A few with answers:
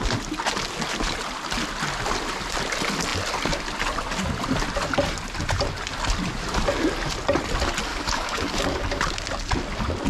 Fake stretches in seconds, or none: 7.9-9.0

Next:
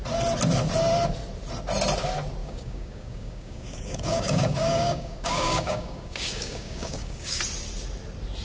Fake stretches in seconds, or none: 2.4-7.4